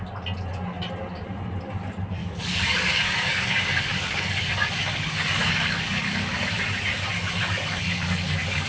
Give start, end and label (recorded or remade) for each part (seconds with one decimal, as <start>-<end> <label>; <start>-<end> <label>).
0.0-2.2 recorded; 2.2-6.6 remade; 6.6-7.4 recorded; 7.4-8.7 remade

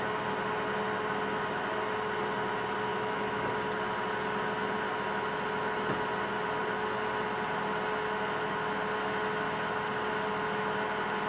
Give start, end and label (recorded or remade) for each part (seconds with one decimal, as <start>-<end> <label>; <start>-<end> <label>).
0.0-2.9 recorded; 2.9-3.5 remade; 3.5-11.3 recorded

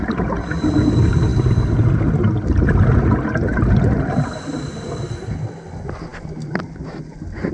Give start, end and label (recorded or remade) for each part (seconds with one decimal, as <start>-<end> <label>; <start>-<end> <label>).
0.0-7.5 recorded

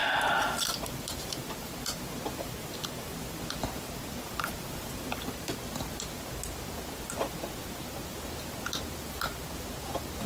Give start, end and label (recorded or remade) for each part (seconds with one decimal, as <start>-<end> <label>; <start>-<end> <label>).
0.0-5.2 remade; 5.2-10.3 recorded

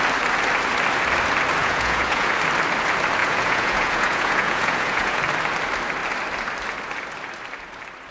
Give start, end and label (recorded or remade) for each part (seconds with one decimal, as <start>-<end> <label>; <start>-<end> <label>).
0.0-1.6 recorded; 1.6-2.3 remade; 2.3-3.2 recorded; 3.2-5.2 remade; 5.2-8.1 recorded

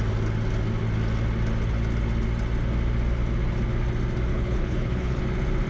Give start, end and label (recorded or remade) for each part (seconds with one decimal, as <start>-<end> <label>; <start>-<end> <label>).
0.0-4.3 recorded; 4.3-5.2 remade; 5.2-5.7 recorded